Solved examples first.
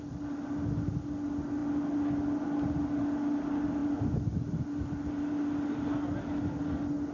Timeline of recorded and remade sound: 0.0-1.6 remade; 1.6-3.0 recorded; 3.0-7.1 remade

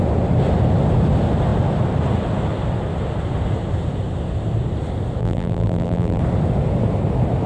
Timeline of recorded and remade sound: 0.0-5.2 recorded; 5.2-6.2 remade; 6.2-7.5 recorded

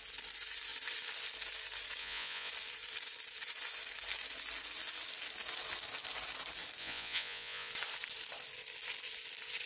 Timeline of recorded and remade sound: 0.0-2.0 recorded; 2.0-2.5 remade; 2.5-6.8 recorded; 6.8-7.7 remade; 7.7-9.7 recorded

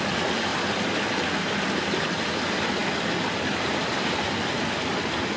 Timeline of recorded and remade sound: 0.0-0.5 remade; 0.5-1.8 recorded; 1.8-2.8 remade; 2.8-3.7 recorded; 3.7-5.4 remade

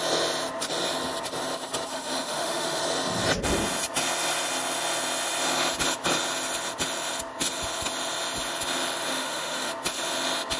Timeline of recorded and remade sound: 0.0-1.9 recorded; 1.9-2.8 remade; 2.8-9.1 recorded; 9.1-9.7 remade; 9.7-10.6 recorded